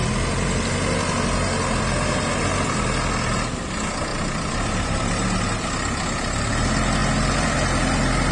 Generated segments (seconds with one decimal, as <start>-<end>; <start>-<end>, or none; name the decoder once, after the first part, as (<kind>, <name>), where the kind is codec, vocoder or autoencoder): 4.1-5.4 (vocoder, BigVGAN v2)

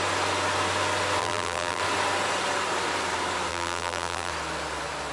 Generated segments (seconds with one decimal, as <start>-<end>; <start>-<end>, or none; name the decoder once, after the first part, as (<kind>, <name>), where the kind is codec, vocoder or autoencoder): 1.2-1.8 (vocoder, BigVGAN v2); 3.5-4.3

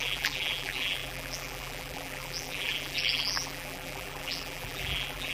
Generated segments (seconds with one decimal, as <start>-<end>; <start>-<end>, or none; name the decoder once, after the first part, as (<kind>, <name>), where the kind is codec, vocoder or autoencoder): 0.0-5.3 (vocoder, BigVGAN v2)

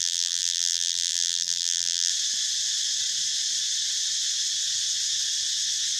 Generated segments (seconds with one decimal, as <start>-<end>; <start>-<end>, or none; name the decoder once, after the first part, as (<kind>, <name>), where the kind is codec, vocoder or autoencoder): 0.0-2.1 (vocoder, BigVGAN v2)

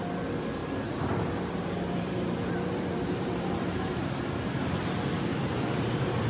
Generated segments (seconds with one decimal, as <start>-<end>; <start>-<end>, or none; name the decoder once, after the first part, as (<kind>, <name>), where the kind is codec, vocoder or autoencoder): 0.6-4.2 (vocoder, BigVGAN v2)

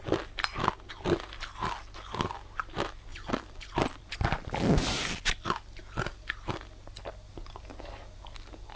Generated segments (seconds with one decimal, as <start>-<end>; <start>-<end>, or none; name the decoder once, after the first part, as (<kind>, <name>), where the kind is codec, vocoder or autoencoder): 3.1-4.6 (vocoder, BigVGAN v2)

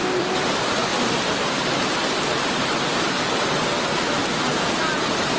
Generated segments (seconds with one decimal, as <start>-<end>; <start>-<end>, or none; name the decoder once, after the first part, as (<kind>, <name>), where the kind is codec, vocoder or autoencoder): 0.0-3.2 (vocoder, BigVGAN v2)